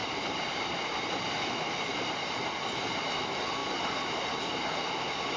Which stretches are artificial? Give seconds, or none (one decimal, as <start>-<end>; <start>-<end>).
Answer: 0.0-2.5